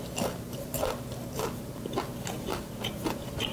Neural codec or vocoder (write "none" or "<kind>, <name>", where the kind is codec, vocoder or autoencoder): none